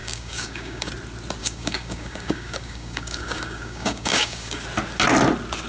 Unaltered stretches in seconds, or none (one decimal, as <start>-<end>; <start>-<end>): 0.9-1.4; 4.6-5.7